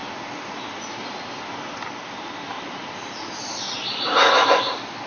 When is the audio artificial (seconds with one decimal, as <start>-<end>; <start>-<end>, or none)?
none